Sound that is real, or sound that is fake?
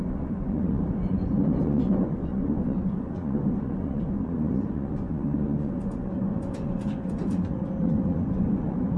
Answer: fake